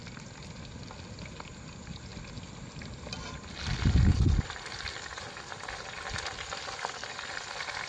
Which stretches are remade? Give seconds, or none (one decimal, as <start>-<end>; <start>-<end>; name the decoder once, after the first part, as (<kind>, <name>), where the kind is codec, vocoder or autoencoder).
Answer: none